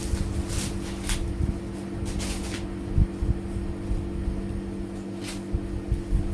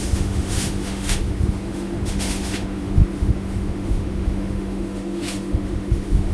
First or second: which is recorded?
first